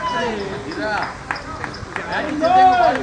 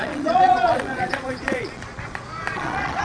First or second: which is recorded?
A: first